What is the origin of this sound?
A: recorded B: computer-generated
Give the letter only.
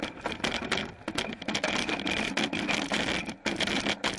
A